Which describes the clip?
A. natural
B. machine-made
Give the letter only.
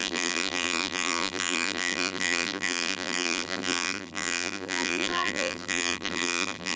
B